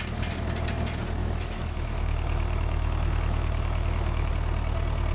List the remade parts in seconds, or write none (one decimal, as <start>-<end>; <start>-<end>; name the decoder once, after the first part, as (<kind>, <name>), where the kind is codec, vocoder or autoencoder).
1.2-4.3 (autoencoder, DAC-VAE)